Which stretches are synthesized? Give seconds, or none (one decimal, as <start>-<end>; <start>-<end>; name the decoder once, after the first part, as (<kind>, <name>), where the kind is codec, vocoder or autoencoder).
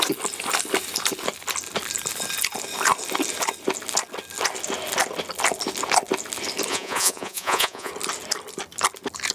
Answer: 6.7-7.9 (vocoder, Vocos)